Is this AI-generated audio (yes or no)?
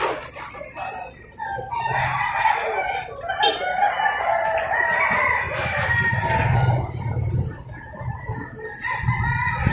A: no